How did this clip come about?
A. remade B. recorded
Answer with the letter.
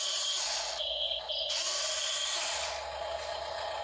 B